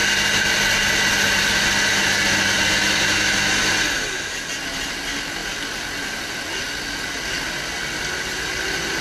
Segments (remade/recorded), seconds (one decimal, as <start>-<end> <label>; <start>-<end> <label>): 0.0-9.0 recorded